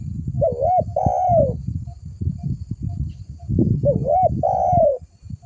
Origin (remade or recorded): recorded